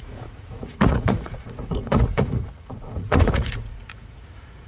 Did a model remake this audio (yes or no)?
yes